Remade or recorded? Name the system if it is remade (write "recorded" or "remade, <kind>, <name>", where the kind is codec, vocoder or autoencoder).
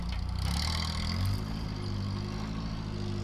recorded